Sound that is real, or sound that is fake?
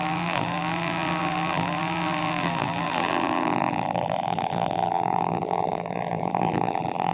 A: fake